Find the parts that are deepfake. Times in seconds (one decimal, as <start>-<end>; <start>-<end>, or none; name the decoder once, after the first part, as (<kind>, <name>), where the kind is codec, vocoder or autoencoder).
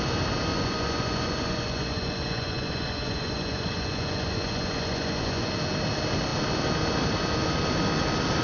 0.5-5.5 (vocoder, Vocos)